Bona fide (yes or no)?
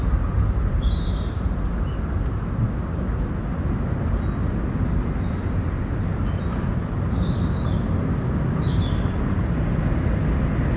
yes